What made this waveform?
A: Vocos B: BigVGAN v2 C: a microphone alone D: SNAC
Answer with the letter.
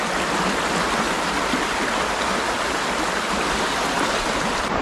B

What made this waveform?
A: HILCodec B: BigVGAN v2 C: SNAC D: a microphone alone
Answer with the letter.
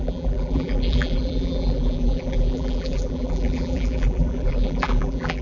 B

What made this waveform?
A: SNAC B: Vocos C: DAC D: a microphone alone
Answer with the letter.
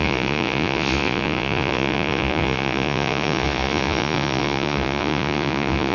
B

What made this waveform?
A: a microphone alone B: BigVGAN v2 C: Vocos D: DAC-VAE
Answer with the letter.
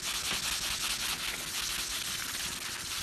A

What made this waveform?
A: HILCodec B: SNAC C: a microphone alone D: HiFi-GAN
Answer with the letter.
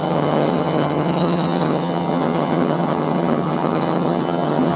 D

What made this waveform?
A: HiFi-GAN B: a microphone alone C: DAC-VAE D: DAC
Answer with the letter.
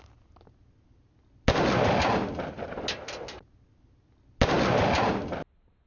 B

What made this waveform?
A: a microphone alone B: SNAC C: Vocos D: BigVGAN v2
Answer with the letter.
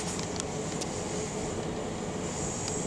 A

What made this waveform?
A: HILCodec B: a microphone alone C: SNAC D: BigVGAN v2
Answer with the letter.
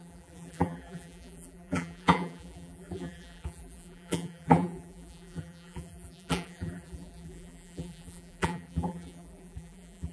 D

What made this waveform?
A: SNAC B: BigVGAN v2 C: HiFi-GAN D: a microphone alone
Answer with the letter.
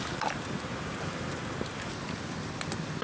D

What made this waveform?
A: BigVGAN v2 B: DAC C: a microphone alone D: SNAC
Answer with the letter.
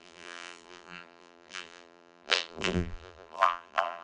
A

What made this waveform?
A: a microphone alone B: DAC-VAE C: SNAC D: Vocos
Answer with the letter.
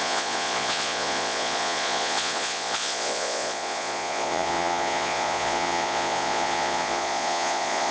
D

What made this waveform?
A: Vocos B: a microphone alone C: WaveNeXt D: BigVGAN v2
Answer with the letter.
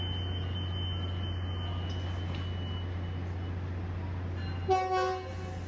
B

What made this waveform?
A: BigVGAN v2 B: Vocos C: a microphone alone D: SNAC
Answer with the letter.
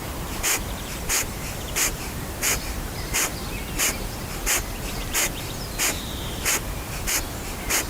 A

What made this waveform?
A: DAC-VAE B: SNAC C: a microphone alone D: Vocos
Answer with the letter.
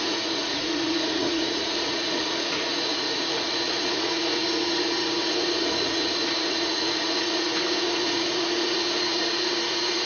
D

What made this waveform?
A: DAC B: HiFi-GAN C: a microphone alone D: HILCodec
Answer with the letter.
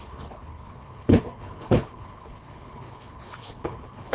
D